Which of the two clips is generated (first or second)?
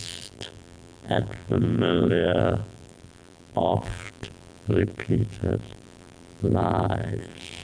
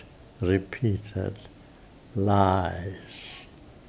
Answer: first